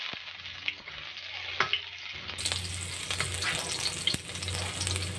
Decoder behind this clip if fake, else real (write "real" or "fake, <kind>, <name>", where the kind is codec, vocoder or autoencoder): real